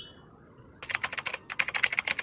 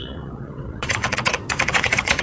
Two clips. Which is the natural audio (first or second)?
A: first